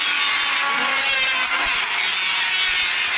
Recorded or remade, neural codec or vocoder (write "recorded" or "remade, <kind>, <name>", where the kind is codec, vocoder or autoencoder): recorded